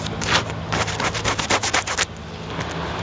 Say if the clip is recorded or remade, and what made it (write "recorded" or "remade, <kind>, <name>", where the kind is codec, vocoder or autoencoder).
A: recorded